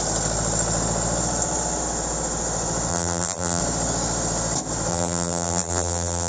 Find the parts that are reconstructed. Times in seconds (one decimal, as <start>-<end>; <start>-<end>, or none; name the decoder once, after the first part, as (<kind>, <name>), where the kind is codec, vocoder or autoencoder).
2.9-3.6 (vocoder, BigVGAN v2); 4.9-6.3